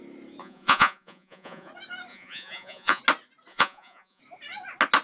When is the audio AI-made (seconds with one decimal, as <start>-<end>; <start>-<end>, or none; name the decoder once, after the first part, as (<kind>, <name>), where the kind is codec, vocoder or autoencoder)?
0.4-1.7 (vocoder, Vocos); 2.1-3.0; 3.5-4.2